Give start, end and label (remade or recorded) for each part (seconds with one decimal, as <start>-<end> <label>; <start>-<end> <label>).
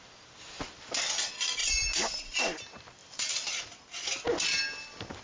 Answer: 0.0-1.6 recorded; 1.6-2.4 remade; 2.4-3.0 recorded; 3.0-3.6 remade; 3.6-5.2 recorded